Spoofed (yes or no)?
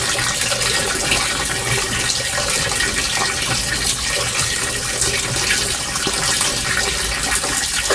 no